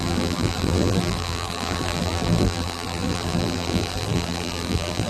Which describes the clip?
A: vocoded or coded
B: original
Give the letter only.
A